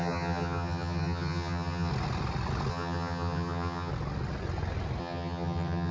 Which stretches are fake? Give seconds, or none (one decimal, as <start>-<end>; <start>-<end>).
0.0-1.9; 2.7-3.9; 5.0-5.9